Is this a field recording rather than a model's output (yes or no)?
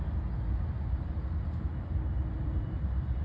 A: yes